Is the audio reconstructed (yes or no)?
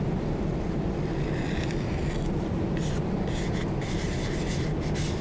no